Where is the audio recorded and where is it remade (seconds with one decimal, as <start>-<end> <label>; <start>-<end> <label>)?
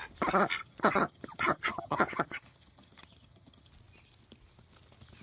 0.0-0.6 recorded; 0.6-3.7 remade; 3.7-5.2 recorded